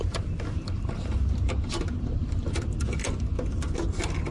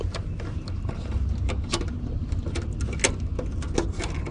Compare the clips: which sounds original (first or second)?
second